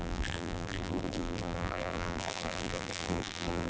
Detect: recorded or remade remade